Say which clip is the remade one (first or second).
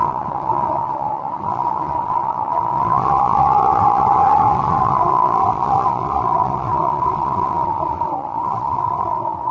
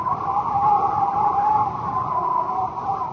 first